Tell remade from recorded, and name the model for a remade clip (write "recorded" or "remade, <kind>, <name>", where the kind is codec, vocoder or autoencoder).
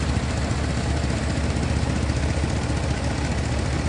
recorded